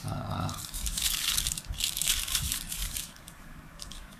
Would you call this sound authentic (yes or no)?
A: no